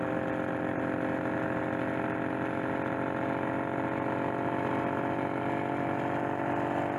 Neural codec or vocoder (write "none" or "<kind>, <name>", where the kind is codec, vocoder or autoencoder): none